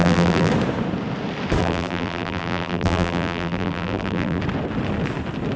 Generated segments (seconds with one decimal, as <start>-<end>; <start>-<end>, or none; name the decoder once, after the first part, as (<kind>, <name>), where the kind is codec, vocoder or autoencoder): 0.0-0.5 (vocoder, BigVGAN v2); 1.6-4.4